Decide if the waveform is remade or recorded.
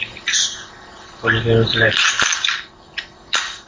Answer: recorded